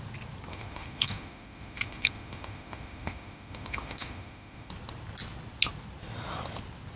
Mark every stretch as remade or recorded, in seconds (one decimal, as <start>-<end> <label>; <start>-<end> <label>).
0.0-0.5 recorded; 0.5-4.7 remade; 4.7-7.0 recorded